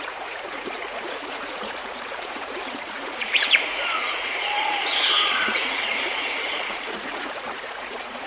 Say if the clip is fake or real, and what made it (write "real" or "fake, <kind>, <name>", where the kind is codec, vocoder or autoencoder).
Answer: fake, vocoder, Vocos